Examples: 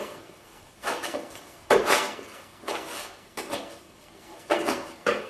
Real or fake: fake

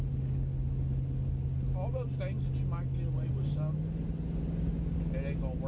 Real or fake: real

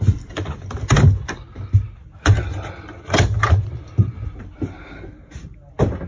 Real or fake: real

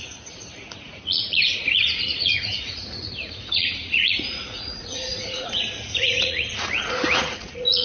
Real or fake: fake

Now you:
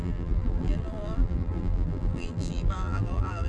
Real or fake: fake